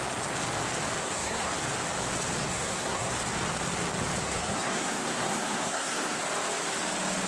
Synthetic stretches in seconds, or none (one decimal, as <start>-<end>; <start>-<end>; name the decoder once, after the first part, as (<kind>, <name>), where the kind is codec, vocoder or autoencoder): 1.0-1.5 (codec, SNAC); 2.4-3.1; 4.2-6.2